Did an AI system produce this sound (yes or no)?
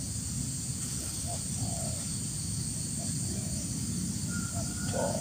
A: no